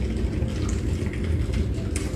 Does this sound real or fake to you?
real